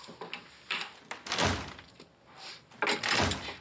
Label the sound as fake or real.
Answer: real